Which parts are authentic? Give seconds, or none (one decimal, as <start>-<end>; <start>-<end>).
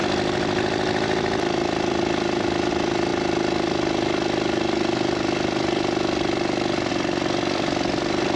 0.0-8.4